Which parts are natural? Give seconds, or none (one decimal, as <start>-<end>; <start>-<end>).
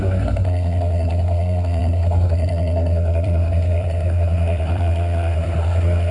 none